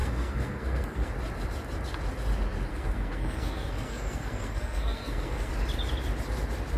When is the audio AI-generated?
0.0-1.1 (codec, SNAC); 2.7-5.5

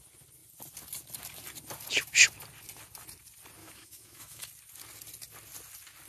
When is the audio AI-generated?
3.6-4.5 (autoencoder, DAC-VAE)

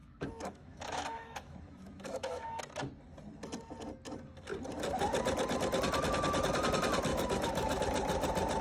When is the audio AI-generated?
0.0-2.6 (autoencoder, DAC-VAE); 7.1-7.8

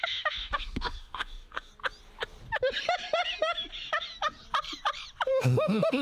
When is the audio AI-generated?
0.0-1.7 (autoencoder, DAC-VAE); 5.3-6.0

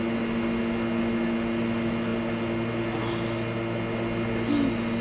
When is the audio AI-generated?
none